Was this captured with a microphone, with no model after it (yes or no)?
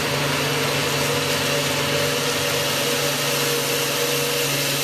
yes